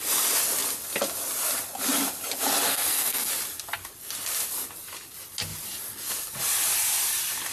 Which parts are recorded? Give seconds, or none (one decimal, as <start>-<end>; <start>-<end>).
0.0-2.7; 3.3-7.5